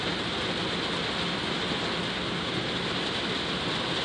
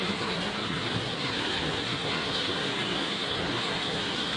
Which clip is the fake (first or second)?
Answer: second